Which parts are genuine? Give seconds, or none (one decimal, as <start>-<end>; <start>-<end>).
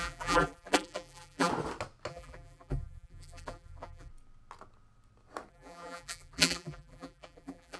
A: 1.5-2.1; 4.1-5.5